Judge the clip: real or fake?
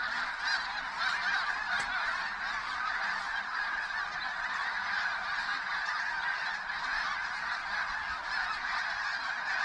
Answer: fake